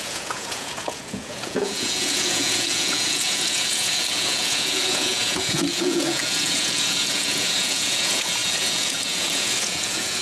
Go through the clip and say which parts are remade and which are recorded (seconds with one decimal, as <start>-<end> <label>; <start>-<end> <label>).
0.0-10.2 remade